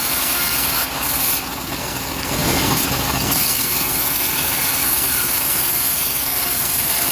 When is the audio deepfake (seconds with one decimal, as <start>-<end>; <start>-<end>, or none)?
0.0-7.1